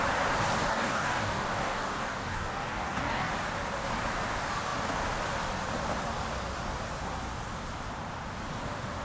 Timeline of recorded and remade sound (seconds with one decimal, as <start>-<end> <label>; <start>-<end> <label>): 0.0-0.7 recorded; 0.7-3.3 remade; 3.3-9.0 recorded